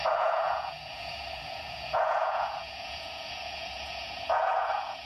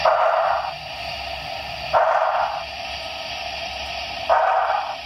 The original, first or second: second